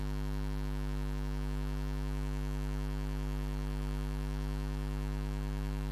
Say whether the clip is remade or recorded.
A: remade